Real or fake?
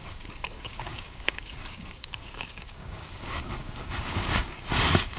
fake